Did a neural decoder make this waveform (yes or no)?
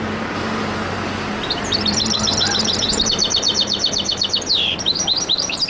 yes